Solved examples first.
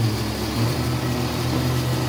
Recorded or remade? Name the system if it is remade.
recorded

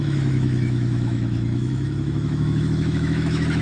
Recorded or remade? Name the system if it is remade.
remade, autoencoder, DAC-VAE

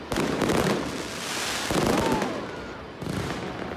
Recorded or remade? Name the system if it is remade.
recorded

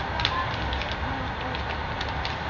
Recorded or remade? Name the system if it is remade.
recorded